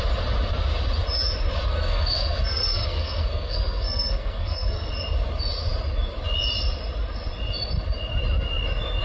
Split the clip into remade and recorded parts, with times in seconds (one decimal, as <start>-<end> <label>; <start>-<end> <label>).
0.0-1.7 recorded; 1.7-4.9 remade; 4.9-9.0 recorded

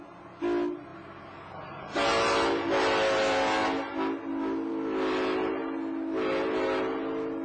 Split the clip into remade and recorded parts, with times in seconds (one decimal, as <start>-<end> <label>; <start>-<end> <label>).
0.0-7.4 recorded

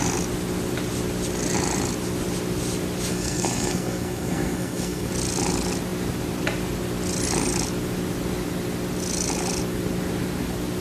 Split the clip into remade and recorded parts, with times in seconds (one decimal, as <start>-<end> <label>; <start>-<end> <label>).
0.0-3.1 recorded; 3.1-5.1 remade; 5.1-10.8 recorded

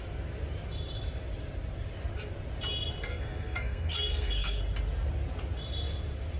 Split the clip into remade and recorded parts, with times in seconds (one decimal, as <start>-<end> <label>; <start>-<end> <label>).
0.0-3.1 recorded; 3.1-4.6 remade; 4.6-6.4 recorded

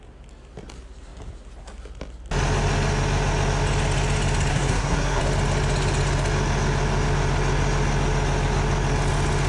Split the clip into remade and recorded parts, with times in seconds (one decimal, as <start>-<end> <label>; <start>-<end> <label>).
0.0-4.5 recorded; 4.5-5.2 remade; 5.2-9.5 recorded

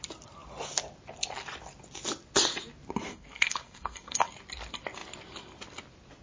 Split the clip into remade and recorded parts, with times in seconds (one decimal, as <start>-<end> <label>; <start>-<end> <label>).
0.0-3.1 recorded; 3.1-4.3 remade; 4.3-6.2 recorded